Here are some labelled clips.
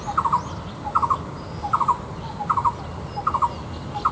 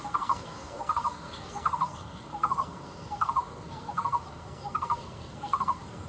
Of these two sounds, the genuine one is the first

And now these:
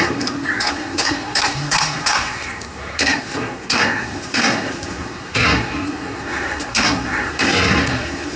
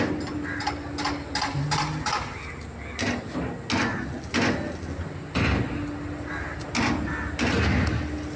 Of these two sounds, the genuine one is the second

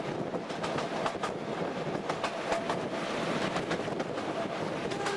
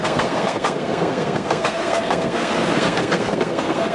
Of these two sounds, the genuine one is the first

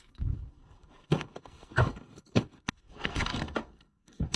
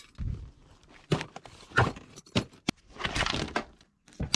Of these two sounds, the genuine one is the second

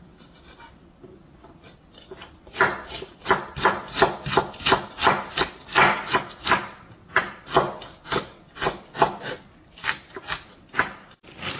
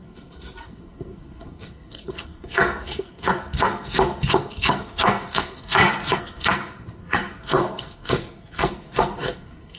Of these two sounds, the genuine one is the first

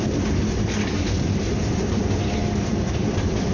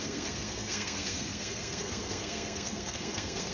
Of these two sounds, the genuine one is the first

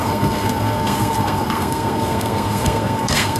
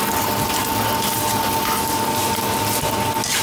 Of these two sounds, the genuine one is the second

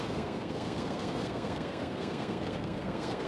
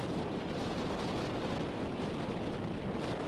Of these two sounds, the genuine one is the second